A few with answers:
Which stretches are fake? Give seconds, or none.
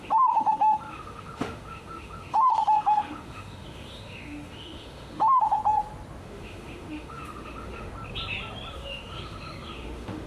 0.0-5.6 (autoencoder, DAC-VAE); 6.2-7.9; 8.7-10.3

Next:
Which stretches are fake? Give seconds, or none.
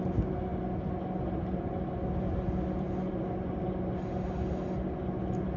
none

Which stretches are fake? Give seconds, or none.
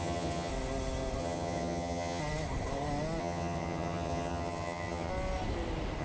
0.0-0.5 (vocoder, HiFi-GAN); 1.2-2.2; 3.2-5.1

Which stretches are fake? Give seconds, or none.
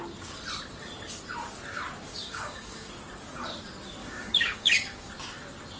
2.1-2.9 (codec, DAC); 4.0-5.1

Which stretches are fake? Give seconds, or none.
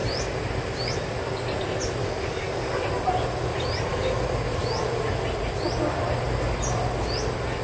2.0-2.8 (codec, DAC)